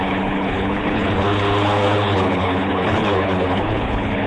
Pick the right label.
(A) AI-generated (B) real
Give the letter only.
A